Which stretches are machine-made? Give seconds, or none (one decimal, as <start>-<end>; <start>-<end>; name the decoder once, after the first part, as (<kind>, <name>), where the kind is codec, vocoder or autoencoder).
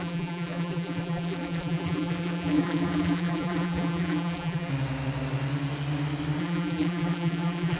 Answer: 0.0-4.7 (vocoder, BigVGAN v2); 6.4-7.8